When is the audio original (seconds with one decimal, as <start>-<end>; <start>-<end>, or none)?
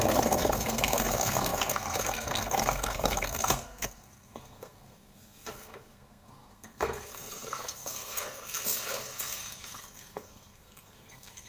none